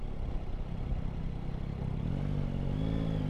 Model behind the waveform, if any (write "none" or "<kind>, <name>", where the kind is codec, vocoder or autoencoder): none